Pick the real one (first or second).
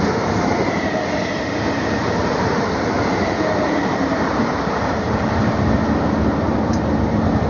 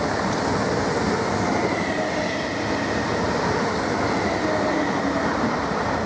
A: second